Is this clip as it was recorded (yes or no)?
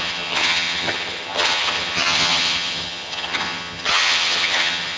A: no